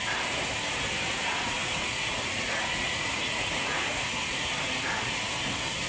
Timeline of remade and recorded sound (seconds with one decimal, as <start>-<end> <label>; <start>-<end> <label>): 0.0-1.2 recorded; 1.2-4.2 remade; 4.2-5.9 recorded